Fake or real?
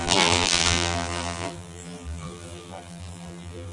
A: fake